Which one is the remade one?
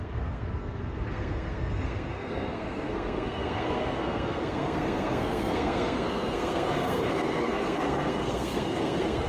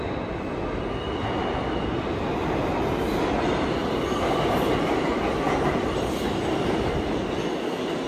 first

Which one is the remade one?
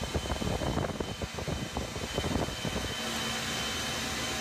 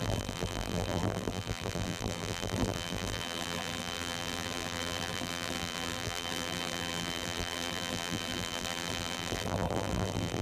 second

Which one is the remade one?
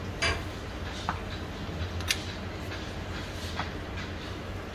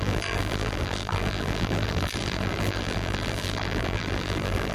second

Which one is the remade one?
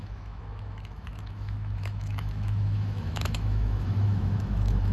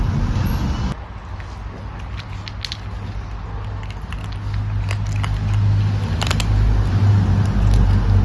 first